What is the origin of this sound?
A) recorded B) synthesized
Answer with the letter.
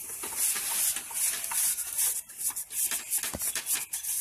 A